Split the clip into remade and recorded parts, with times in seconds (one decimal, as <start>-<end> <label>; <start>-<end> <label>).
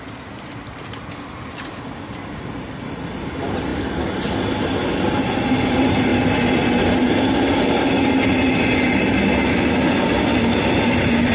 0.0-11.3 recorded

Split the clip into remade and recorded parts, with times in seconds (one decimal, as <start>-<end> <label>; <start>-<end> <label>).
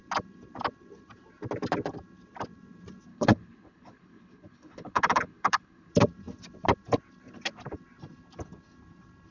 0.0-3.1 recorded; 3.1-5.9 remade; 5.9-9.3 recorded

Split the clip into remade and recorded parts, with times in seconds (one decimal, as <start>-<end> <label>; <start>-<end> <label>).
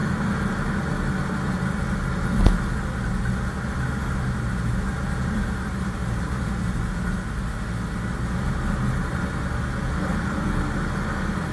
0.0-5.7 recorded; 5.7-6.8 remade; 6.8-11.5 recorded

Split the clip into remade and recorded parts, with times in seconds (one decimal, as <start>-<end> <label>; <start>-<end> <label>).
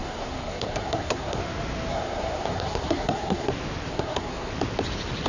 0.0-1.4 remade; 1.4-1.9 recorded; 1.9-3.5 remade; 3.5-3.9 recorded; 3.9-4.5 remade; 4.5-5.3 recorded